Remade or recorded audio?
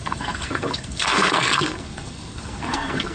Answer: remade